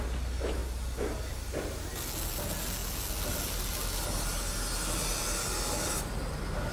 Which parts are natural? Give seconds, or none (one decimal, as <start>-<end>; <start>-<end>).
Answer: 0.0-6.7